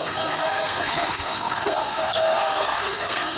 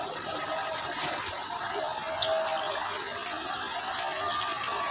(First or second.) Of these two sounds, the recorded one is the second